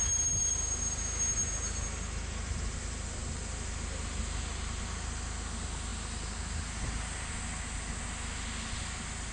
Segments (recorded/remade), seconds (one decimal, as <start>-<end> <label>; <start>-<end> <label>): 0.0-9.3 recorded